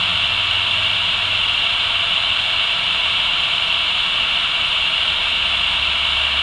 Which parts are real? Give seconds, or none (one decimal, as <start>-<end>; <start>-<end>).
0.0-1.7; 5.5-6.4